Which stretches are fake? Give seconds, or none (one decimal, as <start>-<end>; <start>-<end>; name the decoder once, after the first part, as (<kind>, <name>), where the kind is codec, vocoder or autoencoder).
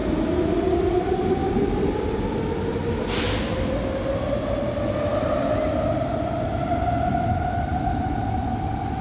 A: none